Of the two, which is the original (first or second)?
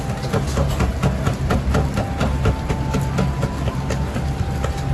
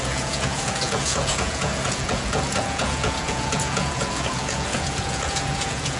first